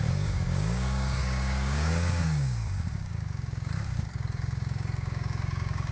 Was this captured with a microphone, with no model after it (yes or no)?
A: no